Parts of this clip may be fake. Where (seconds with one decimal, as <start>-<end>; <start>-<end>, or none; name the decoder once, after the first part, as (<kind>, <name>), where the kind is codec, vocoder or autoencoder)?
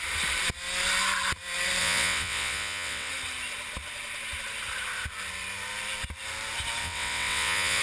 1.8-3.1 (vocoder, WaveNeXt); 6.8-7.8